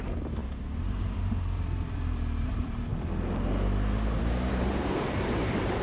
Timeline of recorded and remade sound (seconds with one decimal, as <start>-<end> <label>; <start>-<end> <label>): 0.0-0.4 remade; 0.4-1.0 recorded; 1.0-2.9 remade; 2.9-4.2 recorded; 4.2-5.8 remade